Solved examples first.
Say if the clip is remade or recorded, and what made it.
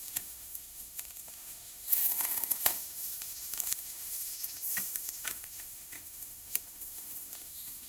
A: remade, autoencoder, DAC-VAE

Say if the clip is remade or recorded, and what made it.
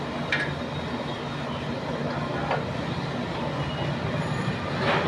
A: recorded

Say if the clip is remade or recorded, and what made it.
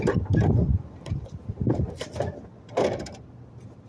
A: recorded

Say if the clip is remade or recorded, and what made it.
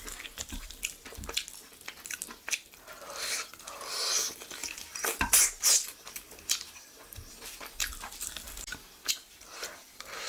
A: recorded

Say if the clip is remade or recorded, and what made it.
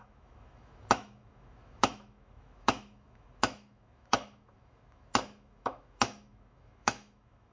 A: remade, autoencoder, DAC-VAE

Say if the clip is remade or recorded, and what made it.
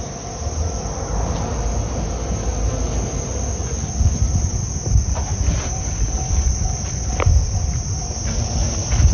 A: recorded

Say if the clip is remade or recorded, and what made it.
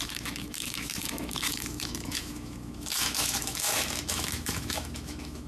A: remade, autoencoder, DAC-VAE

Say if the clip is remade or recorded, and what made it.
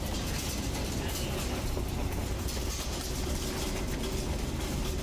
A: recorded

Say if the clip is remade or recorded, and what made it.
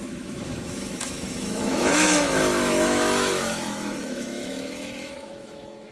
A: remade, autoencoder, DAC-VAE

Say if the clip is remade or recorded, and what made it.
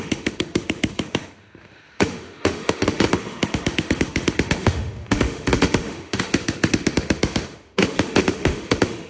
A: remade, autoencoder, DAC-VAE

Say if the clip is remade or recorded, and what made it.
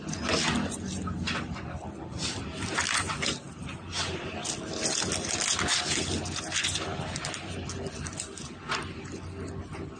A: recorded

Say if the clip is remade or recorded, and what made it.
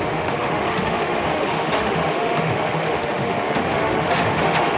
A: remade, autoencoder, DAC-VAE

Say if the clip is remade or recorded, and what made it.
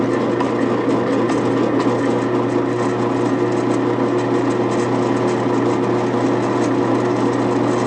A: recorded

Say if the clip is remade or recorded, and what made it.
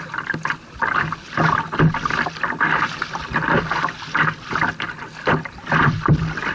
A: recorded